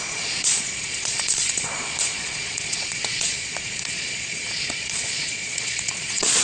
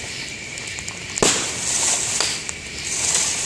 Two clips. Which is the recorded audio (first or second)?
second